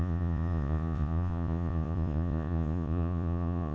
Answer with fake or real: fake